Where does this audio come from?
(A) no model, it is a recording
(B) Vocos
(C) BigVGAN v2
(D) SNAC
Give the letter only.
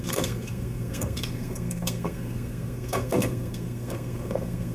D